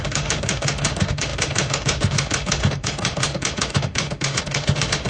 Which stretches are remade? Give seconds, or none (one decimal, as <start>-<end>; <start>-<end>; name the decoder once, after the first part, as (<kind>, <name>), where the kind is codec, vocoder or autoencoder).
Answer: 0.0-5.1 (autoencoder, DAC-VAE)